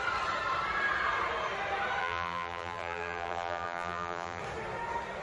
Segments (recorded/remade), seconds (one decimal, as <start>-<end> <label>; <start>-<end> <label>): 0.0-2.0 recorded; 2.0-4.4 remade; 4.4-5.2 recorded